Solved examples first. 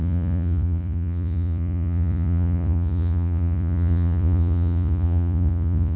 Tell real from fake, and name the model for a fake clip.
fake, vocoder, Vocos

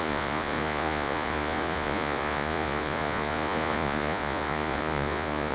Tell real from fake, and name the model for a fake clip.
fake, vocoder, Vocos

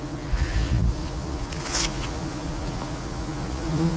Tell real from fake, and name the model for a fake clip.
fake, vocoder, Vocos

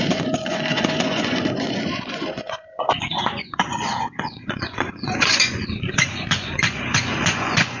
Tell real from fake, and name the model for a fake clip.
fake, vocoder, Vocos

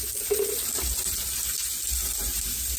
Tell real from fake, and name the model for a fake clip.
real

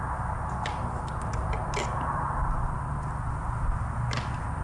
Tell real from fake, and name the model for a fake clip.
real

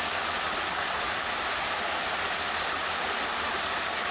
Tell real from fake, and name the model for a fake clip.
real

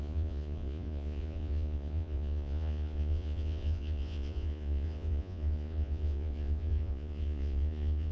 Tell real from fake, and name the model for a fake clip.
fake, vocoder, Vocos